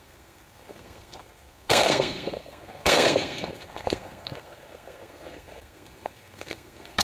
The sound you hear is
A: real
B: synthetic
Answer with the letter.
B